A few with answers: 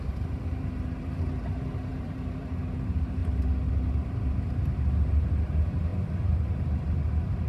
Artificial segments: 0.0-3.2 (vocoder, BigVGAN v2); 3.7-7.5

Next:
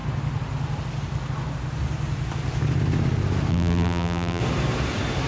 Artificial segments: 3.5-4.4 (vocoder, BigVGAN v2)

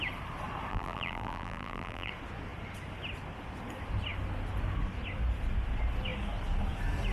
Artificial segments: 0.7-2.1 (vocoder, BigVGAN v2)

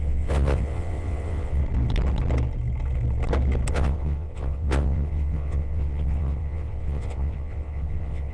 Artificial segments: 0.0-1.6 (vocoder, WaveNeXt); 3.7-8.3

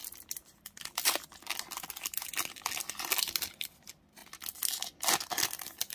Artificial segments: none

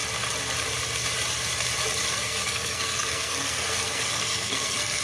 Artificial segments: 2.1-5.0 (codec, SNAC)